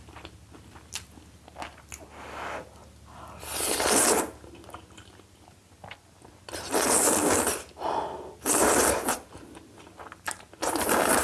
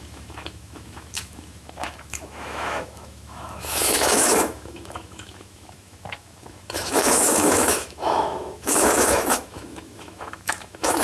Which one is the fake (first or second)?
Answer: second